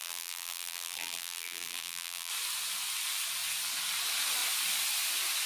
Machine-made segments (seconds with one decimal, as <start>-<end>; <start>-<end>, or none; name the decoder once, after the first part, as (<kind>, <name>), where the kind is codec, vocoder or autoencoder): 0.0-2.3 (vocoder, BigVGAN v2)